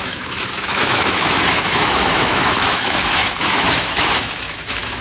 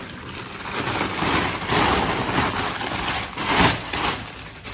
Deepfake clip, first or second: first